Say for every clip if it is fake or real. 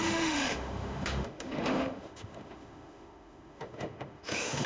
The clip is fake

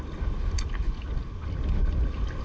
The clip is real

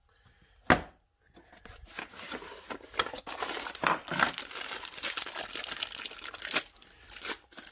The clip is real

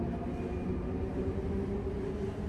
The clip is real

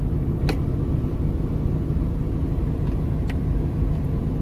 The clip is real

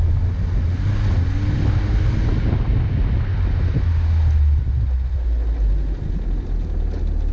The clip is real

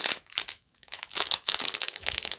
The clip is fake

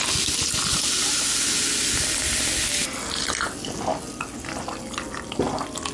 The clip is real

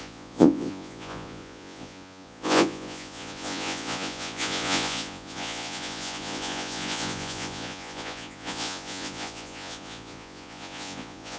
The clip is fake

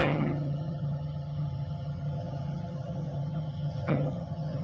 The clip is fake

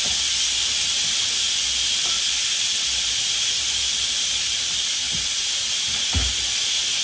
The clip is real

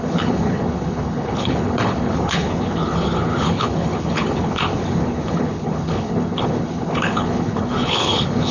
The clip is fake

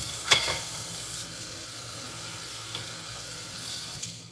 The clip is fake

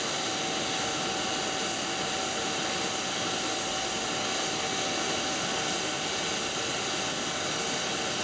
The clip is real